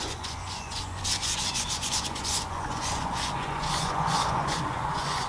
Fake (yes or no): yes